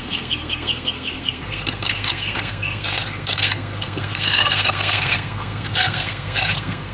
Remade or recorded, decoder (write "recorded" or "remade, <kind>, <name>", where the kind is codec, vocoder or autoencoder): remade, codec, SNAC